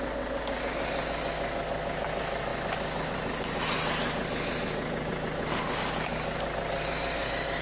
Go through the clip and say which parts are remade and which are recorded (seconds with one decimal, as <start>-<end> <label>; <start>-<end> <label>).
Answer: 0.0-7.6 recorded